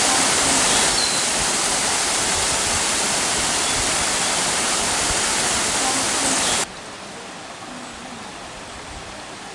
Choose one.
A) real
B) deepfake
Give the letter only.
A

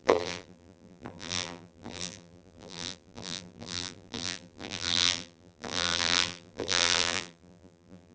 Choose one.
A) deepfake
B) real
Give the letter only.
A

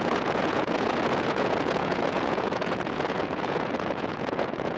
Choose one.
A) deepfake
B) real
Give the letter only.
A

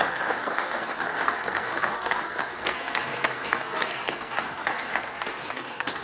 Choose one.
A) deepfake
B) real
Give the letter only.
A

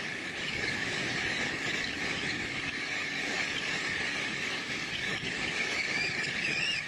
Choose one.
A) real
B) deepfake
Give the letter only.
B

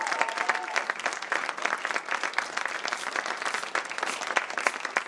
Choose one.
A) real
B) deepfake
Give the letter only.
A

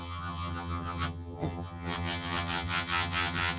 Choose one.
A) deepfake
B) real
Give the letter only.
A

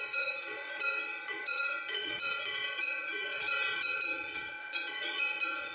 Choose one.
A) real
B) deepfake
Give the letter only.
B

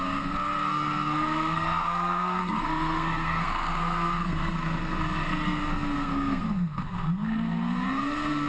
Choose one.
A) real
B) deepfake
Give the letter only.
B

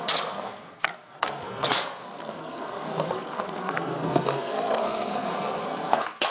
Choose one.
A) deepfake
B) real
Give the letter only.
A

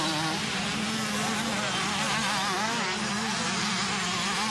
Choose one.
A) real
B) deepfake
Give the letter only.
A